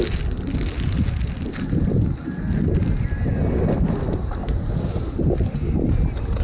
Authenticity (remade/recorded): recorded